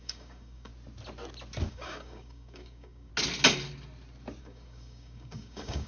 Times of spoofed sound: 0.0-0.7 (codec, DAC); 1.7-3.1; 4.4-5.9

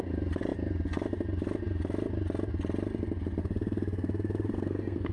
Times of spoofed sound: 3.4-5.1 (codec, SNAC)

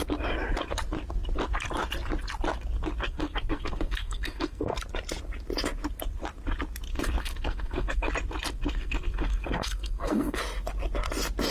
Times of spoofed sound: 3.0-4.8 (codec, SNAC); 6.9-8.1; 8.6-10.4

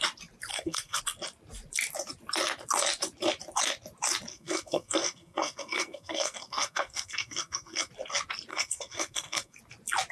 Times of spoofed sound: 0.5-1.0 (codec, SNAC); 4.3-7.9; 8.5-9.6

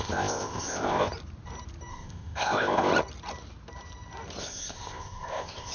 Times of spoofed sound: 0.0-1.1 (codec, ZipCodec); 1.9-2.9; 4.4-5.7

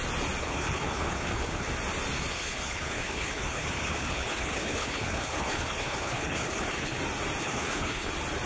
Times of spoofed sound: 0.4-1.7 (codec, HILCodec); 2.3-7.0; 7.4-8.1